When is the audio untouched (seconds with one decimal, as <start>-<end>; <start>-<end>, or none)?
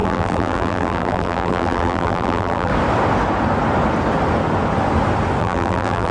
2.7-5.4